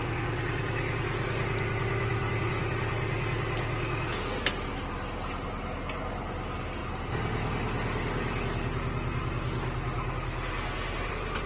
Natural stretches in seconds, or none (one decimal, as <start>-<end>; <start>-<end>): 0.0-11.5